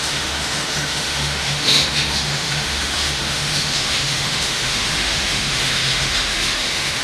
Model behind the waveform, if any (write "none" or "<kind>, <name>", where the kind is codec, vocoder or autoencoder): autoencoder, DAC-VAE